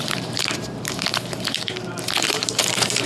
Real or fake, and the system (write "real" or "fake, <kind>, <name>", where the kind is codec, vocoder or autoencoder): fake, vocoder, BigVGAN v2